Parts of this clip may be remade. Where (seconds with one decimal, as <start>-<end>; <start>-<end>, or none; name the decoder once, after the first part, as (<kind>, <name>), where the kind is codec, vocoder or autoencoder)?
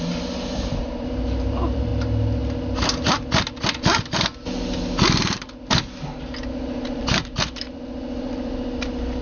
0.0-1.9 (vocoder, BigVGAN v2); 6.5-9.2